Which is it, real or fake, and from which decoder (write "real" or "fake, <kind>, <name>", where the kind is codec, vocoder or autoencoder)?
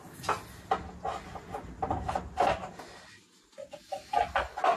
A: real